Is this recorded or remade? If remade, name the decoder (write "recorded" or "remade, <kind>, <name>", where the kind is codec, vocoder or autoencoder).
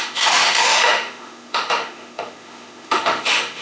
remade, autoencoder, DAC-VAE